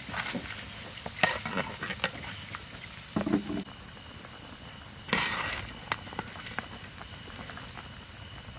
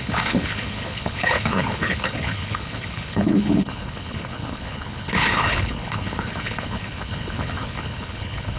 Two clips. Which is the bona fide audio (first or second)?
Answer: first